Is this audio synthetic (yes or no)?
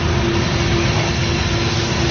no